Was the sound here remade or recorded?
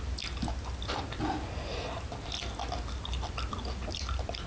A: recorded